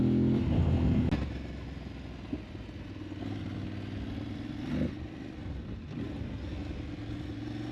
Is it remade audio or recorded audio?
recorded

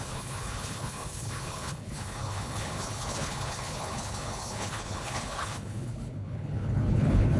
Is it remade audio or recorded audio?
remade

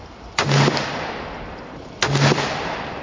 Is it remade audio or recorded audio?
recorded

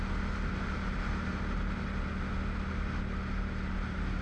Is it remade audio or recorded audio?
recorded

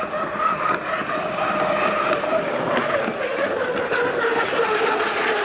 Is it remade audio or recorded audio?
recorded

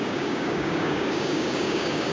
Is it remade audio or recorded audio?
remade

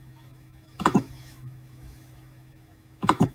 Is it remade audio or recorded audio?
remade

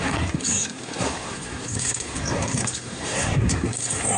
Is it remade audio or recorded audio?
remade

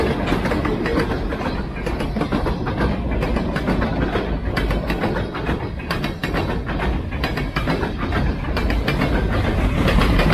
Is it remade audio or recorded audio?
recorded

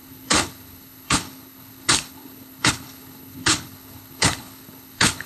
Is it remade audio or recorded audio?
remade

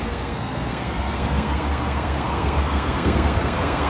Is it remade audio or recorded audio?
remade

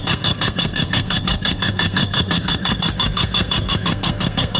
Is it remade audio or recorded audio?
remade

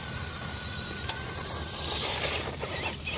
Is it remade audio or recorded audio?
recorded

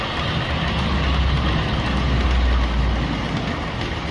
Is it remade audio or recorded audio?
recorded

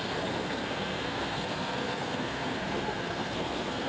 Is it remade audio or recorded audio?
remade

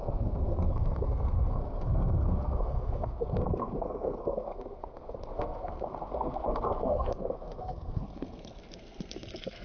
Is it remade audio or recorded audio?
remade